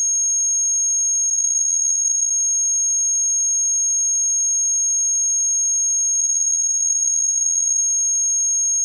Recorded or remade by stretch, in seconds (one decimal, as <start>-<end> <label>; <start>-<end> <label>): 0.0-1.3 recorded; 1.3-2.3 remade; 2.3-6.2 recorded; 6.2-7.8 remade; 7.8-8.8 recorded